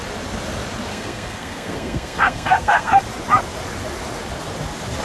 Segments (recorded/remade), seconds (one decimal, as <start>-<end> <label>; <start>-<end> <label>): 0.0-0.9 recorded; 0.9-3.0 remade; 3.0-5.0 recorded